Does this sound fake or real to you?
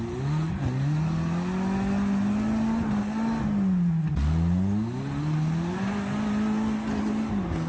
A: real